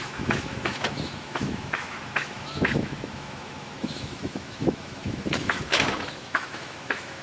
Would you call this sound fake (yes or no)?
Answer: yes